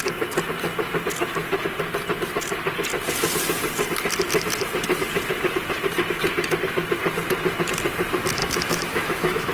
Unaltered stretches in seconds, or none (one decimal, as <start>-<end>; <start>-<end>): 0.0-8.4